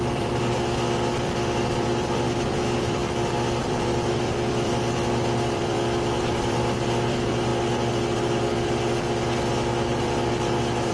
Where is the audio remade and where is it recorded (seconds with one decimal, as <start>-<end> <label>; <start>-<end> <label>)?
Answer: 0.0-3.0 remade; 3.0-3.6 recorded; 3.6-7.5 remade; 7.5-10.9 recorded